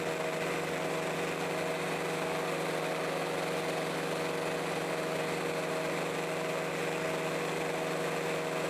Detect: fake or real real